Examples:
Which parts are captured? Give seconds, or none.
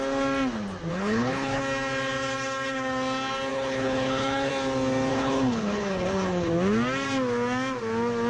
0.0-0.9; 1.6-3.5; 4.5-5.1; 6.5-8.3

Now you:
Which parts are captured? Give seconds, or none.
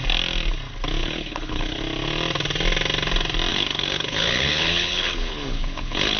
0.0-1.0; 1.8-3.5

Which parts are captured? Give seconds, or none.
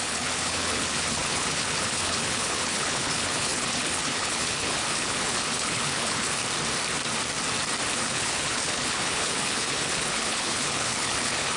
6.4-7.9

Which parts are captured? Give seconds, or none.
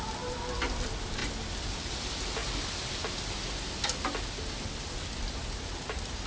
0.0-6.3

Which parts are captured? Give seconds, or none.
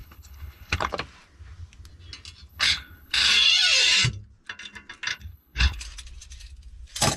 0.9-2.5; 3.3-5.1; 5.8-7.2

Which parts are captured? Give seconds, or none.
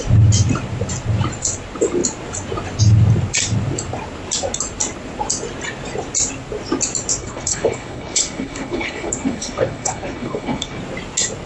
0.0-7.2; 10.8-11.5